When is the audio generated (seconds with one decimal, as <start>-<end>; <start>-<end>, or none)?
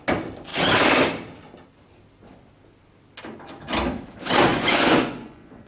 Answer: 4.5-5.7